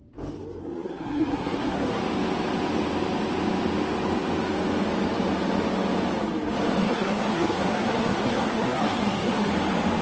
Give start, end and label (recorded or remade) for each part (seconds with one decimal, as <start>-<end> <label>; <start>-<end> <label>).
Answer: 0.0-0.6 recorded; 0.6-2.0 remade; 2.0-6.8 recorded; 6.8-9.5 remade; 9.5-10.0 recorded